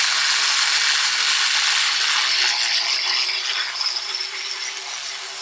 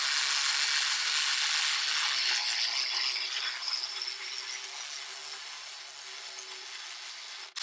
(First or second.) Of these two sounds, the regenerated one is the first